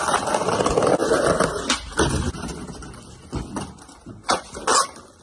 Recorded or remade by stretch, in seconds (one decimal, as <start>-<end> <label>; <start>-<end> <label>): 0.0-5.2 recorded